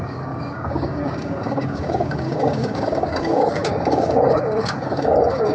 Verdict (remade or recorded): remade